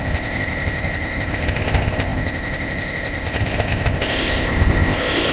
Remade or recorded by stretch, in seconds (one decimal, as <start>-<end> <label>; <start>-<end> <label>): 0.0-5.3 remade